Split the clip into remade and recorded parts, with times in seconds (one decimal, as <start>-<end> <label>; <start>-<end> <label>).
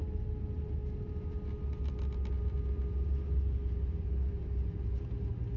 0.0-5.6 recorded